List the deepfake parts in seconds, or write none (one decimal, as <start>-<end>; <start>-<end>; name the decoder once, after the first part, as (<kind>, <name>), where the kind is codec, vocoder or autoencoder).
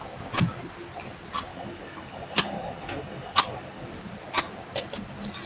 1.5-3.8 (codec, DAC)